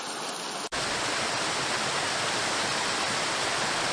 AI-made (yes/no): no